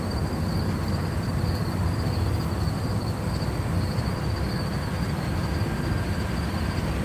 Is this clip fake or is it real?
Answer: real